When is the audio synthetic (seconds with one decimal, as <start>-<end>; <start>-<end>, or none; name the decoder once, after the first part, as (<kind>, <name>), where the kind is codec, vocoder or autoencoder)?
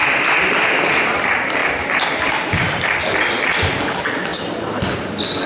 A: 0.5-1.6 (vocoder, BigVGAN v2); 3.3-4.3; 5.0-5.5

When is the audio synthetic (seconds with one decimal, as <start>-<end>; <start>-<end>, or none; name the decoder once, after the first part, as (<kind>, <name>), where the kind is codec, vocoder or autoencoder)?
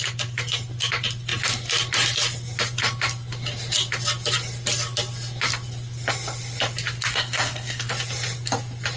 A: 7.1-7.9 (codec, SNAC)